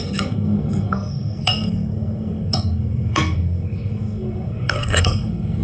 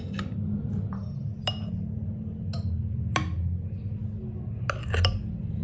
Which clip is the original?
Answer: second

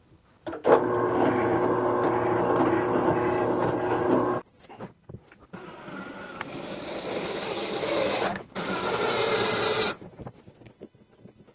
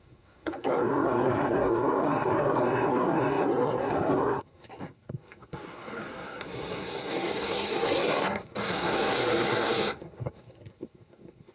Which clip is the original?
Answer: first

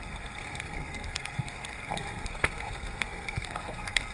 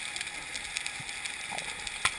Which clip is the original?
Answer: second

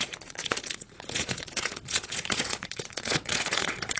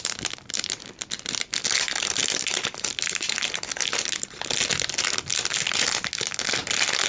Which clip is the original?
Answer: second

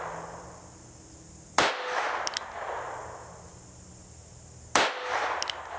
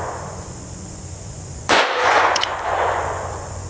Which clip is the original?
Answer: first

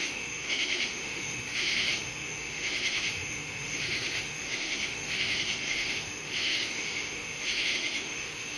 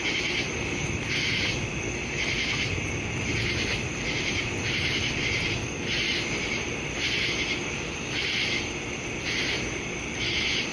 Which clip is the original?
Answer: second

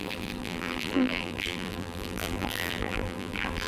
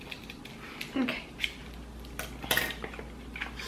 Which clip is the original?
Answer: second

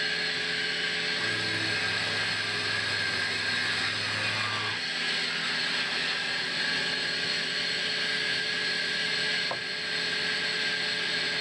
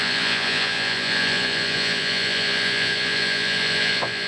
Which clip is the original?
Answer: first